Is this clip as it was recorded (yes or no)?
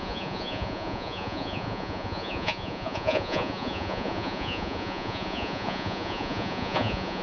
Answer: no